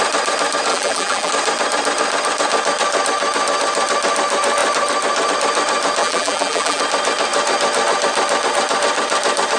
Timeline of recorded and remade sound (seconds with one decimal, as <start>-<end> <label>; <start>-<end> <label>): 0.0-0.7 recorded; 0.7-1.3 remade; 1.3-6.0 recorded; 6.0-6.8 remade; 6.8-9.6 recorded